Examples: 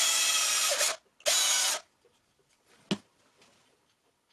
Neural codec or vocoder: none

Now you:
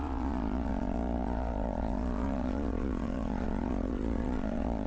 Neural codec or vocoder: vocoder, Vocos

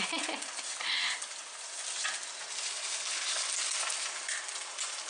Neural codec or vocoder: none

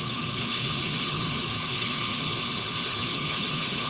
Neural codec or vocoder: codec, HILCodec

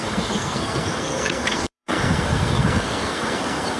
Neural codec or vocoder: codec, SNAC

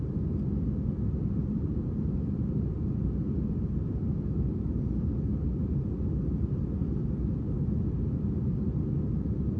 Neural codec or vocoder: none